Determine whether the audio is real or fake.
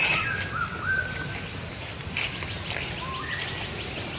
real